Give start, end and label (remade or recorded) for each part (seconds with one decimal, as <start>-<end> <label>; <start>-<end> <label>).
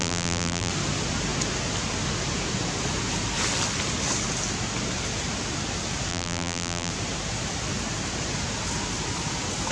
0.0-0.7 remade; 0.7-6.1 recorded; 6.1-6.9 remade; 6.9-9.7 recorded